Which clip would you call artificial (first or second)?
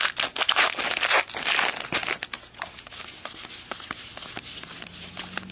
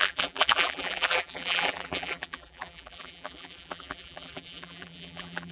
second